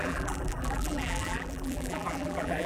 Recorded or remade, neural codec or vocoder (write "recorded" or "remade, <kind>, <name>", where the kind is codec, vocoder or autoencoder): remade, vocoder, BigVGAN v2